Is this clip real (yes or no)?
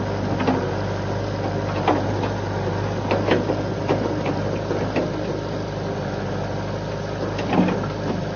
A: yes